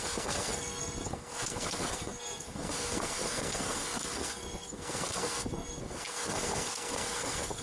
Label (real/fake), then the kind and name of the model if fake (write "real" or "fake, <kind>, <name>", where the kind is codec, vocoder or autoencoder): fake, codec, SNAC